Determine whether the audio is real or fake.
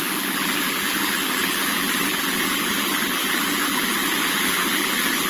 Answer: fake